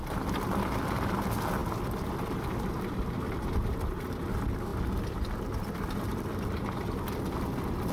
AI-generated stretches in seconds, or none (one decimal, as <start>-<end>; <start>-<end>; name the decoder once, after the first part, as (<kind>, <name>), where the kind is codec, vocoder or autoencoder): none